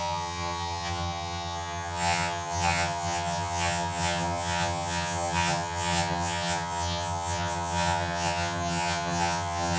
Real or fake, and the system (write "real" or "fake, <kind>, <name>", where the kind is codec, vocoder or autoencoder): fake, vocoder, HiFi-GAN